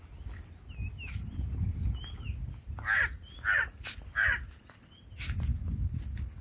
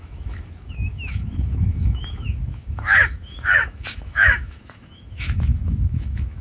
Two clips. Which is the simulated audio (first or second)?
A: second